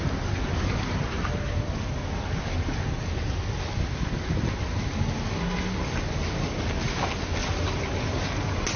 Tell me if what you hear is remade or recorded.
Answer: recorded